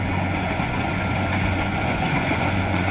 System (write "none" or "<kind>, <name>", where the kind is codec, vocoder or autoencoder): vocoder, Vocos